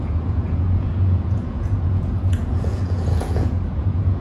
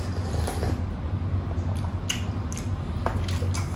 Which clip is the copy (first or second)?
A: first